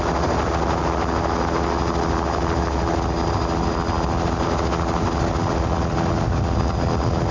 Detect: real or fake real